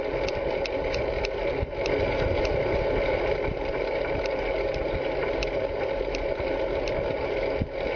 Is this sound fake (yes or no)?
no